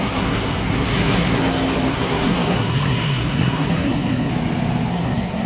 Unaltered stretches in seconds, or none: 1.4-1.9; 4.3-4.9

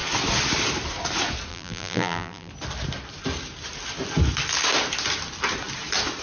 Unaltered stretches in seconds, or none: 0.0-1.5; 2.5-6.2

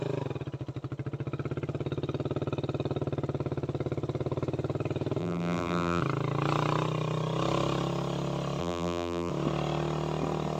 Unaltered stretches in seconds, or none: 0.0-5.2; 6.0-8.6; 9.3-10.6

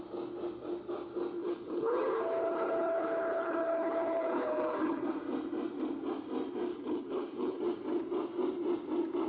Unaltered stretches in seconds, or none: 0.0-1.4; 5.0-6.7; 7.6-9.3

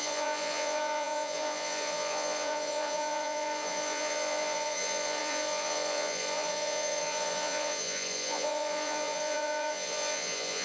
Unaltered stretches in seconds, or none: none